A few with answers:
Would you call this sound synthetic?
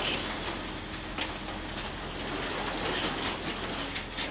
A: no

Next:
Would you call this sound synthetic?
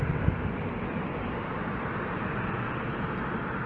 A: no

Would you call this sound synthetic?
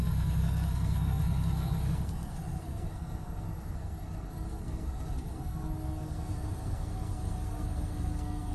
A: yes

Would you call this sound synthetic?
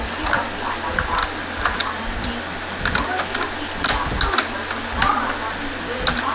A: no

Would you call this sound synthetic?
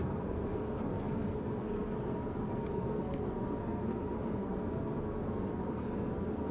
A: yes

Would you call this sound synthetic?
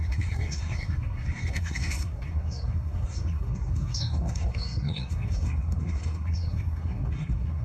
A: yes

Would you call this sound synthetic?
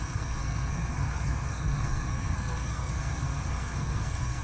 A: yes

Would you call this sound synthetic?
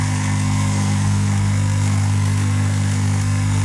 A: yes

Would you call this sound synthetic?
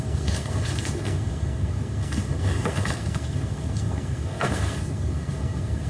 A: yes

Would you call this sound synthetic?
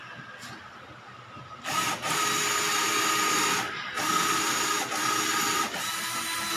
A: no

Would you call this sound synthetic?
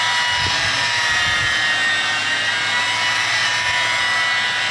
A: no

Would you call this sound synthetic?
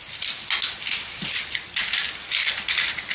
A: no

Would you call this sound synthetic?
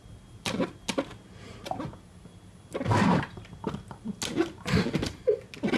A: no